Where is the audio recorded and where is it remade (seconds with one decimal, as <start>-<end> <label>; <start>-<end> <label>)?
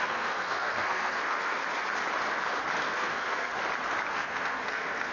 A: 0.0-1.6 remade; 1.6-2.8 recorded; 2.8-3.5 remade; 3.5-4.1 recorded; 4.1-5.1 remade